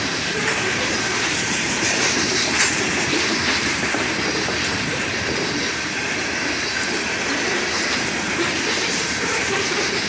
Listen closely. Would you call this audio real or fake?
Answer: fake